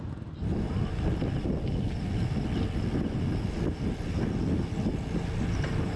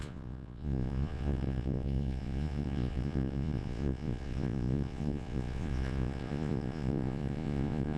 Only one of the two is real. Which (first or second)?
first